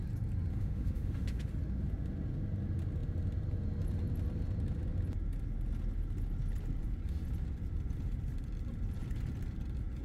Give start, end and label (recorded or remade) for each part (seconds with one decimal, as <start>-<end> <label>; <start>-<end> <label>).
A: 0.0-0.5 recorded; 0.5-1.5 remade; 1.5-10.0 recorded